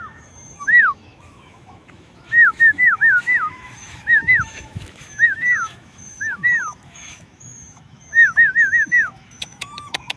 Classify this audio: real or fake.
fake